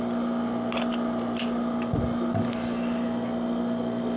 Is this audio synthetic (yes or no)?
no